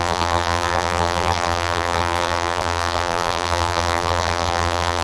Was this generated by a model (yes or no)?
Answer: yes